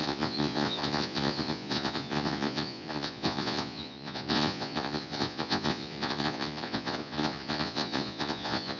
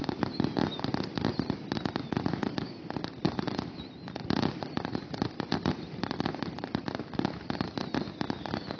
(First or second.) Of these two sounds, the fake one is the first